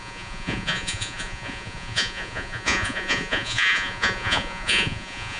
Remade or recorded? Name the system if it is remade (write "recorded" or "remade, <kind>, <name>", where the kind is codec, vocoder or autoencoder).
remade, vocoder, Vocos